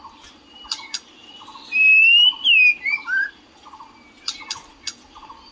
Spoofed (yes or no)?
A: no